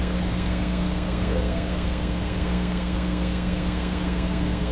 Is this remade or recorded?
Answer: remade